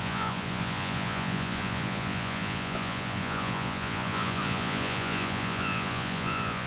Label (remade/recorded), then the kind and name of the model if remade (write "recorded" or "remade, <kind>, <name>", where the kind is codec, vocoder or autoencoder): remade, vocoder, Vocos